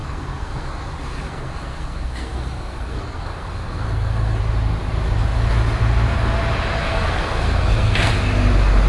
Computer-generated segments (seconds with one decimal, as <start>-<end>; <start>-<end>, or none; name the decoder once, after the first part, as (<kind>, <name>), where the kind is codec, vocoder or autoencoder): 0.0-4.4 (codec, SNAC); 6.8-8.1